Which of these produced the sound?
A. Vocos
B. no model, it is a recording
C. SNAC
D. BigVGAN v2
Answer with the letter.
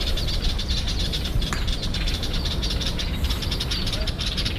D